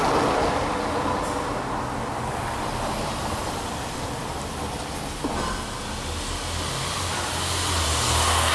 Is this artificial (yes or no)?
no